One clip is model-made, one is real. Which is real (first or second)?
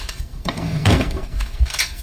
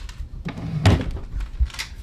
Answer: second